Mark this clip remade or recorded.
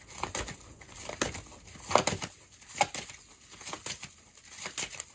recorded